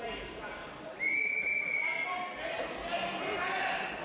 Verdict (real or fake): real